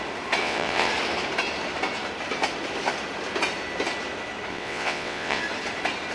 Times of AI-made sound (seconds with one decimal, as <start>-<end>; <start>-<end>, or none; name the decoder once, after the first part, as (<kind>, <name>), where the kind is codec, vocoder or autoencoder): 0.4-0.9 (vocoder, WaveNeXt); 4.5-5.4